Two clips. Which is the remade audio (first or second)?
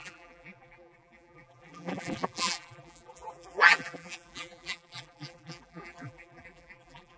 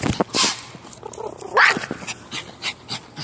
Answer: first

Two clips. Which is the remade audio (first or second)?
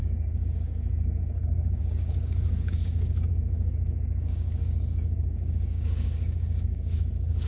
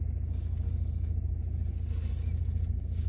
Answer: first